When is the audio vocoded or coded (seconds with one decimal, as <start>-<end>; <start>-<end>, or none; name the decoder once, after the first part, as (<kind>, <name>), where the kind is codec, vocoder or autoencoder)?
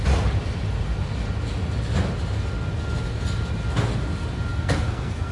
4.5-5.3 (codec, SNAC)